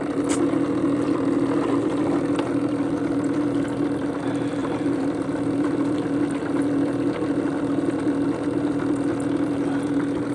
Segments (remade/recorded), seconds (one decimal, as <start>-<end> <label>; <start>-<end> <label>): 0.0-4.6 recorded; 4.6-5.7 remade; 5.7-10.3 recorded